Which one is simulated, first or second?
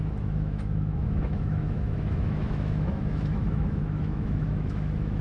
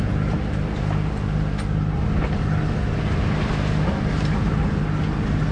first